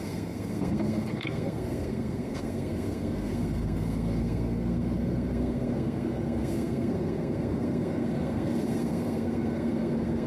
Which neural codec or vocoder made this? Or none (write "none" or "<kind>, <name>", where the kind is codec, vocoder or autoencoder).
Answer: codec, SNAC